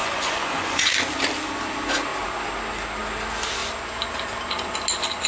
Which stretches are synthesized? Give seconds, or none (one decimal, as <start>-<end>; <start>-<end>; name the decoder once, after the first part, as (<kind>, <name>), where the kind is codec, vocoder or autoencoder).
0.0-0.9 (vocoder, Vocos)

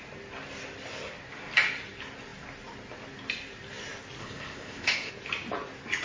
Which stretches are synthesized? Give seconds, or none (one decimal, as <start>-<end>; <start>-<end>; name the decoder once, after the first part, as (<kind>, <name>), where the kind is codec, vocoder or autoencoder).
4.2-5.1 (codec, ZipCodec)

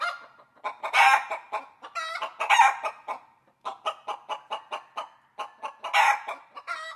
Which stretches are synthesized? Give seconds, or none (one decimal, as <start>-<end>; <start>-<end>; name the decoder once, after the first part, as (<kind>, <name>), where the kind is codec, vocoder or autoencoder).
none

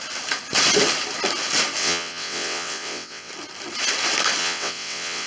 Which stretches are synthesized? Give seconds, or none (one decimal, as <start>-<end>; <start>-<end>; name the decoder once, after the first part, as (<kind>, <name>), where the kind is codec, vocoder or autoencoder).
1.8-3.3 (vocoder, WaveNeXt); 4.4-5.3